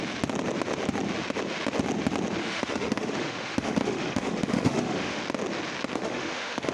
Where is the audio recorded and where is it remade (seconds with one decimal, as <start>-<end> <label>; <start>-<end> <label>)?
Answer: 0.0-2.4 recorded; 2.4-5.2 remade; 5.2-5.9 recorded; 5.9-6.7 remade